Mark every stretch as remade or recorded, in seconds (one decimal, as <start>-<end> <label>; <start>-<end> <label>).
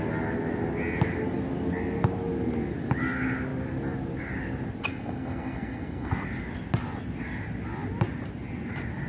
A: 0.0-4.9 recorded; 4.9-6.1 remade; 6.1-9.1 recorded